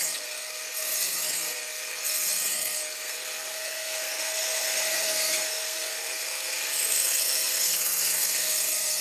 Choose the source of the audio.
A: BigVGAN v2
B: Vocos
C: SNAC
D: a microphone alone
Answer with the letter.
C